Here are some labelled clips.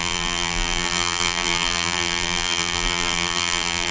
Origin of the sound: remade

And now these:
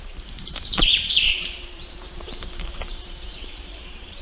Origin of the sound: remade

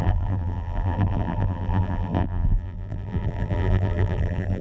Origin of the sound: remade